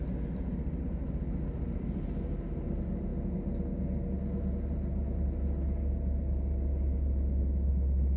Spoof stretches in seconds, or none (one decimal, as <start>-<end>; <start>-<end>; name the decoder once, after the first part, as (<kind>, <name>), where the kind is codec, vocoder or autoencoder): none